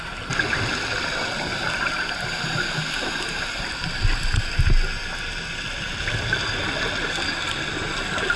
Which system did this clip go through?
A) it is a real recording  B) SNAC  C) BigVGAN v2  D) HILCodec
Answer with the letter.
A